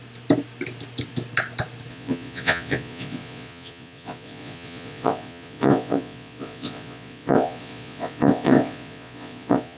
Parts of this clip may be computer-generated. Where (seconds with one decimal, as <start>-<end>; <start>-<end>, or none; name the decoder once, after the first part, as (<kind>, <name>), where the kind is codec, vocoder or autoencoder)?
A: 1.9-9.8 (vocoder, Vocos)